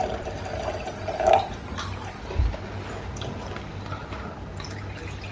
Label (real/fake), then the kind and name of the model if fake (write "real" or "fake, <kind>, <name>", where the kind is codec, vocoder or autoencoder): real